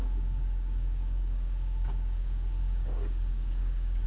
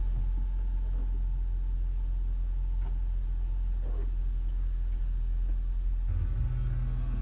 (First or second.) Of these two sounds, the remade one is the first